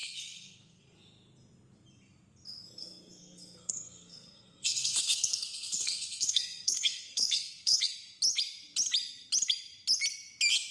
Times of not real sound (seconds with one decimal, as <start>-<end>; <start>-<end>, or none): 0.0-0.8; 2.8-7.9